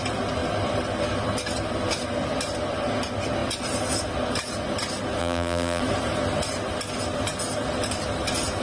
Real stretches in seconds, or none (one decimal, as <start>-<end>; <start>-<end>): 0.0-5.2; 5.8-8.6